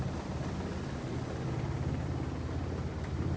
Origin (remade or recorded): recorded